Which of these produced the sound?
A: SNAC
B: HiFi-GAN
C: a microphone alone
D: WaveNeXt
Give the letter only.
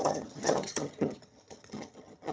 B